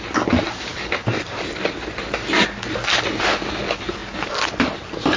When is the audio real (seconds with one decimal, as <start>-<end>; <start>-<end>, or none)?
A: 0.0-5.2